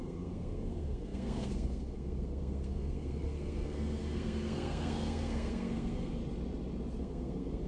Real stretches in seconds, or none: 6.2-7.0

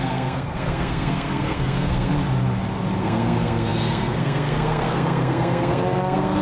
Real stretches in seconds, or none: 2.1-3.0

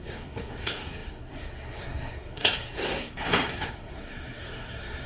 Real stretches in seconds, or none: none